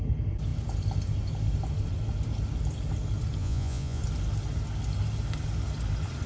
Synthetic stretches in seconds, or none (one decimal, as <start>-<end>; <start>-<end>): 3.4-4.0